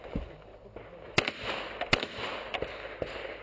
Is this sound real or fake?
real